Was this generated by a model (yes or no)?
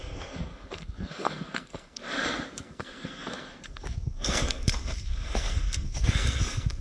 yes